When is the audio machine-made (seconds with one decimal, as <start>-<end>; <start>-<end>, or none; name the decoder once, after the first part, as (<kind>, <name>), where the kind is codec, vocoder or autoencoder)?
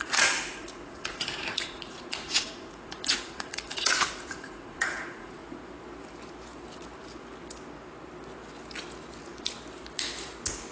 0.0-5.4 (vocoder, Vocos)